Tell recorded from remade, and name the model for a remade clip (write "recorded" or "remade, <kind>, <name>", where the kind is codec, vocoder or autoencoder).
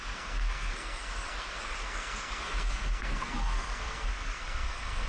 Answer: remade, codec, SNAC